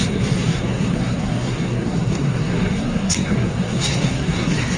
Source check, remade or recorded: remade